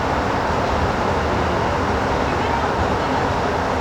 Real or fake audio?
real